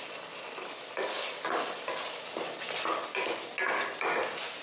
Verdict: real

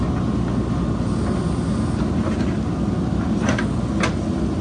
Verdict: real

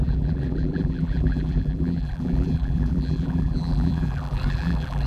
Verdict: fake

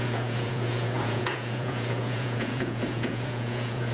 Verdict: fake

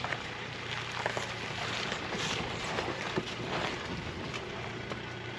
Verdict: real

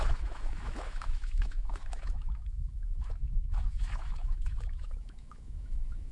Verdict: fake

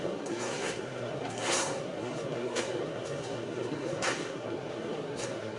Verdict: fake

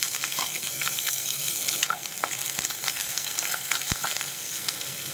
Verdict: fake